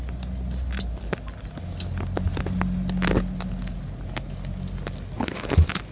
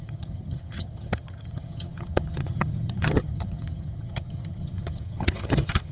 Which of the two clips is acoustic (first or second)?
first